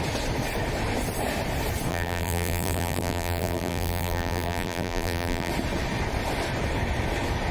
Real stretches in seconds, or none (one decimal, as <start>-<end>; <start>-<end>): 0.0-1.9; 5.5-7.5